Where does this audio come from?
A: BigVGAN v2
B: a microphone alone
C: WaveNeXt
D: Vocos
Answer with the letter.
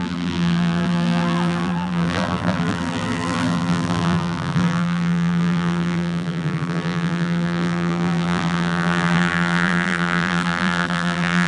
A